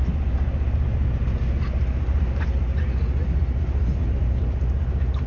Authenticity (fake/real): real